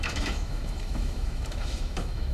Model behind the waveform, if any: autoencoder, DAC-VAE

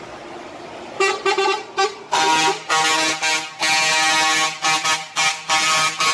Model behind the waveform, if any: none